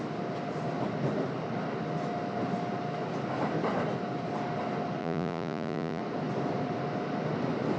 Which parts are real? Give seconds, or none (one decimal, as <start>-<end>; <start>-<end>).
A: 0.0-5.0; 6.0-7.8